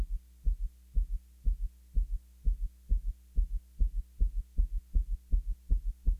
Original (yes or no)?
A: yes